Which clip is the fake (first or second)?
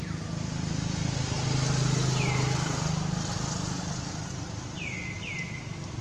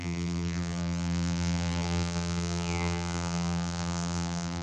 second